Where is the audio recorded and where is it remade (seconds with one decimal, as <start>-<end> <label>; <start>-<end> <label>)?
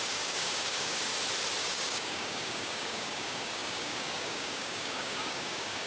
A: 0.0-1.1 remade; 1.1-1.6 recorded; 1.6-5.9 remade